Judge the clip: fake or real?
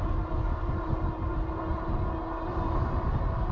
real